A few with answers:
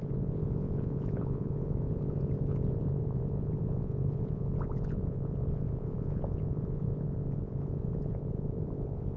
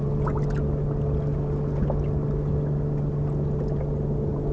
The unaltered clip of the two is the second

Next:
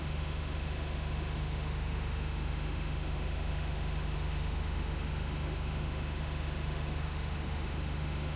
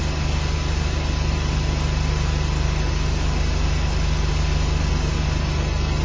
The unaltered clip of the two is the second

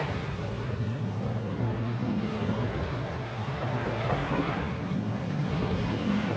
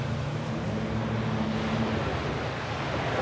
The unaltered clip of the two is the second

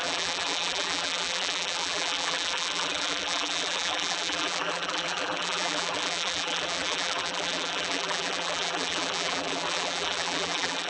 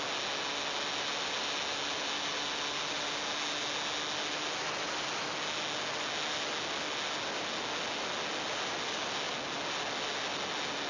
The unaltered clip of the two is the second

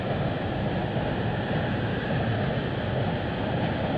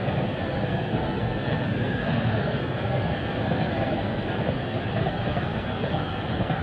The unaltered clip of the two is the first